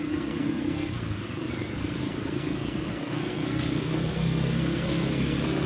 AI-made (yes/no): yes